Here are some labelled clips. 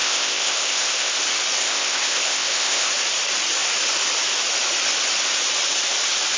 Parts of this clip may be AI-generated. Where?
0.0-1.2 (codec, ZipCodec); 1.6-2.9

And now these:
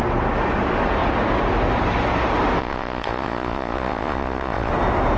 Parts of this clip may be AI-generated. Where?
2.6-4.7 (vocoder, Vocos)